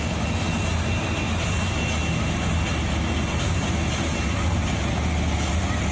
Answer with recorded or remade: recorded